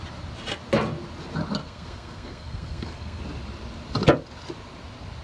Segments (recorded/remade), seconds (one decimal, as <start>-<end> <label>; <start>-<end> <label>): 0.0-1.6 recorded; 1.6-3.2 remade; 3.2-5.2 recorded